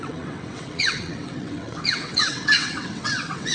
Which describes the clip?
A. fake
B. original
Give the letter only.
A